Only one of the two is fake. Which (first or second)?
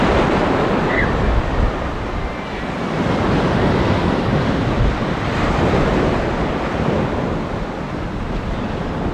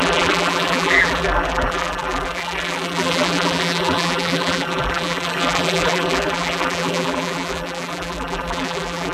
second